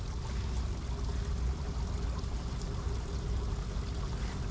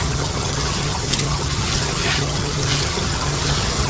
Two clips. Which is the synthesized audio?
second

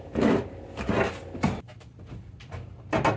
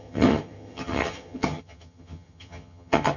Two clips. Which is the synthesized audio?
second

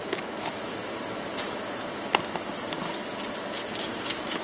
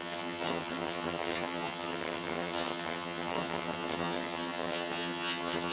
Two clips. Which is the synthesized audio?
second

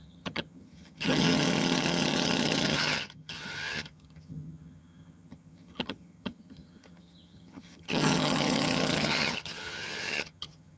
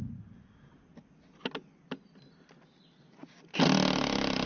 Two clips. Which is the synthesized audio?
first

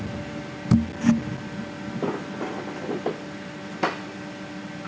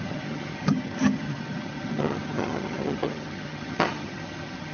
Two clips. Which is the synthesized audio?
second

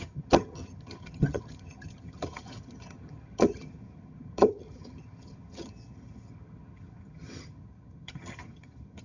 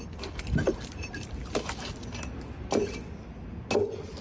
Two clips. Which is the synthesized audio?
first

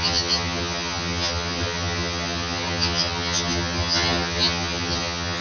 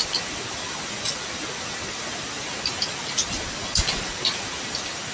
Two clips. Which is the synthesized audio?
first